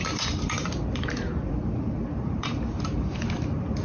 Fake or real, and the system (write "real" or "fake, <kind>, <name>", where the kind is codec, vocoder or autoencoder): fake, vocoder, BigVGAN v2